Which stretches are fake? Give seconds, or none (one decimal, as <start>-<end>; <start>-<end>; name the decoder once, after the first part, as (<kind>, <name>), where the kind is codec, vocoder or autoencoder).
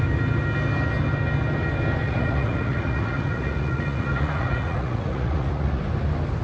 2.0-5.8 (vocoder, Vocos)